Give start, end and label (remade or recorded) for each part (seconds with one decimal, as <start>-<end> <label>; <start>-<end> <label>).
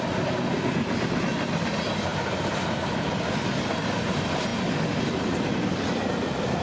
0.0-6.6 recorded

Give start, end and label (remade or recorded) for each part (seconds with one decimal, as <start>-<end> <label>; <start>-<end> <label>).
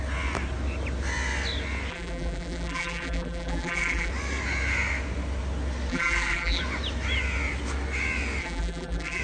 0.0-1.9 recorded; 1.9-4.1 remade; 4.1-5.9 recorded; 5.9-6.6 remade; 6.6-8.4 recorded; 8.4-9.2 remade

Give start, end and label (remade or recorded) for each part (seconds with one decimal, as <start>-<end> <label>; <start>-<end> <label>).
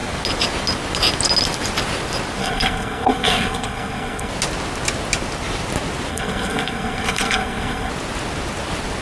0.0-2.4 recorded; 2.4-4.3 remade; 4.3-6.1 recorded; 6.1-7.9 remade; 7.9-9.0 recorded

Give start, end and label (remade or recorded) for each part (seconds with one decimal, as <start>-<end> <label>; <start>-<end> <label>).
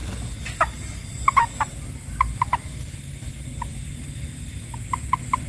0.0-5.5 recorded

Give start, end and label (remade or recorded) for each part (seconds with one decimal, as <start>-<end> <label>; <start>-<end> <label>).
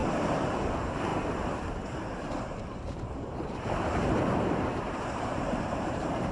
0.0-0.7 recorded; 0.7-1.1 remade; 1.1-2.9 recorded; 2.9-6.3 remade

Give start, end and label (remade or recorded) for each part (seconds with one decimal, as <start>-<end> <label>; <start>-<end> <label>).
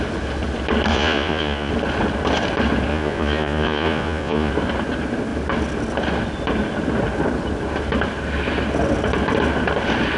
0.0-0.9 recorded; 0.9-1.7 remade; 1.7-2.9 recorded; 2.9-4.5 remade; 4.5-10.2 recorded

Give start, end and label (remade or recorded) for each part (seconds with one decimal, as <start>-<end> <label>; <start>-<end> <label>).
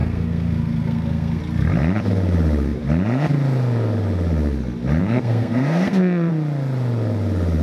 0.0-1.4 remade; 1.4-5.0 recorded; 5.0-6.3 remade; 6.3-7.6 recorded